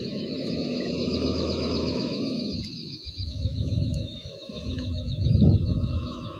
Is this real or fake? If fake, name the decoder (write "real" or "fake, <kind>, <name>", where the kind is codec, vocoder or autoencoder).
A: fake, autoencoder, DAC-VAE